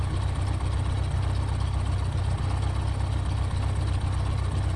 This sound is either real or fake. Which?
real